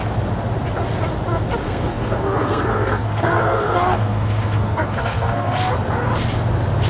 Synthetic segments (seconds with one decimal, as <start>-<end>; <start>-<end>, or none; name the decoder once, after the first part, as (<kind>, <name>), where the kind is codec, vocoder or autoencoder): 1.6-5.7 (codec, SNAC)